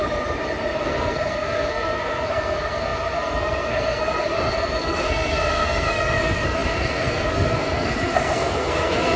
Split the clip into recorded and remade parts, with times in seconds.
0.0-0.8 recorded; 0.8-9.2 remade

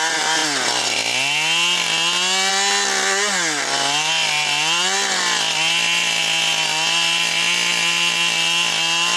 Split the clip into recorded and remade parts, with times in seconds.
0.0-9.2 recorded

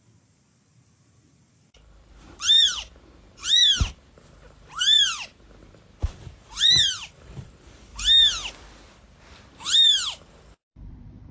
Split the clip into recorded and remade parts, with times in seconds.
0.0-3.6 remade; 3.6-4.4 recorded; 4.4-7.9 remade; 7.9-9.2 recorded; 9.2-11.3 remade

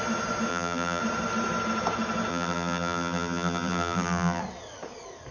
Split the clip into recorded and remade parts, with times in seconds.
0.0-0.5 recorded; 0.5-1.0 remade; 1.0-2.3 recorded; 2.3-4.4 remade; 4.4-5.3 recorded

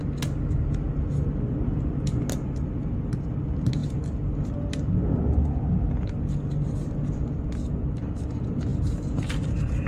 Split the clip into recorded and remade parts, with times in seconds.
0.0-9.9 recorded